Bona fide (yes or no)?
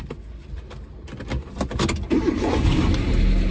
yes